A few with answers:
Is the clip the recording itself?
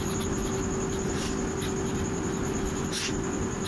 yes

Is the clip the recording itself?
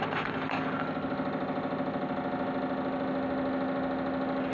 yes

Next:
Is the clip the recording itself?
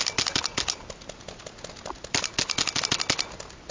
yes